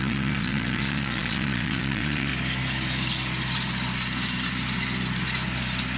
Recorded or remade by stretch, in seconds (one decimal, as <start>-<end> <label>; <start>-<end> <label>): 0.0-2.3 remade; 2.3-6.0 recorded